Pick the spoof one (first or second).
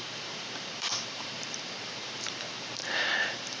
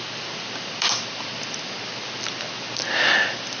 first